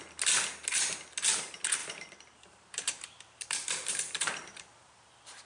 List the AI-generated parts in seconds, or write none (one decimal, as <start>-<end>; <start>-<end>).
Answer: 1.8-5.1

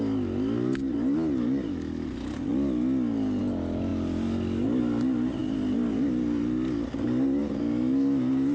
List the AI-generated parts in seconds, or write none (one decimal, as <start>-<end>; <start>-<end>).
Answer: none

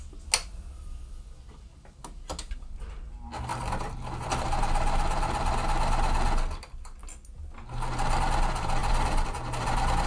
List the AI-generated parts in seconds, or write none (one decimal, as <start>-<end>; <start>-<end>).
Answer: 3.5-4.6; 8.8-10.1

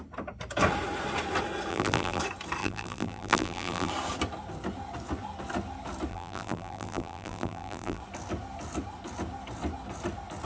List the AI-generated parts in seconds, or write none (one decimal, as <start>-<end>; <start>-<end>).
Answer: 1.7-2.2; 2.6-3.9; 6.1-8.0

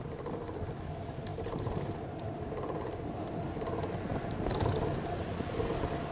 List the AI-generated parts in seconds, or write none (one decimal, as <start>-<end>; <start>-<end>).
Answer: 1.3-2.4

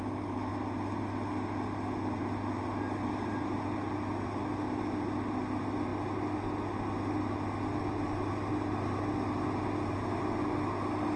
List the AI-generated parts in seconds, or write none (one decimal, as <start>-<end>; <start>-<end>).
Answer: none